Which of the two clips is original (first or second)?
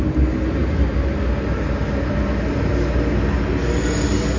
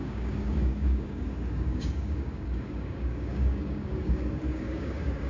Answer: first